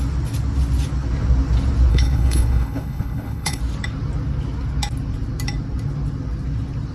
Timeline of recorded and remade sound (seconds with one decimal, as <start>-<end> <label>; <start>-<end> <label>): 0.0-1.9 recorded; 1.9-3.6 remade; 3.6-6.9 recorded